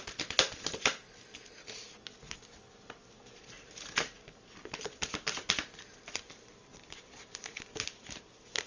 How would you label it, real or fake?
real